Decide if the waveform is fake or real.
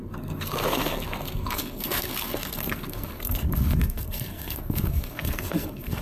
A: fake